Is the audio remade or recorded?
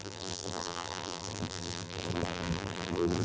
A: remade